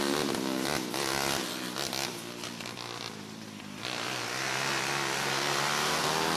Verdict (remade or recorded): recorded